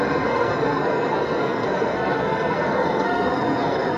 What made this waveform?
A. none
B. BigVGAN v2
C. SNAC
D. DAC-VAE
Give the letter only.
C